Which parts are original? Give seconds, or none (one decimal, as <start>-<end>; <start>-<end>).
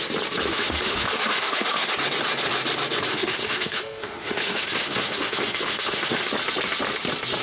0.0-0.5; 1.9-3.1; 6.3-7.4